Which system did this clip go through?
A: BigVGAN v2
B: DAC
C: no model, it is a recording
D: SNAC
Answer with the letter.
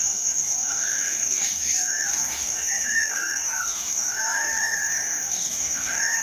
B